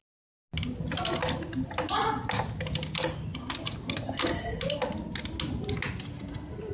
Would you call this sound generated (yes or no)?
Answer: no